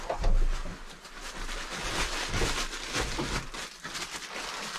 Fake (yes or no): no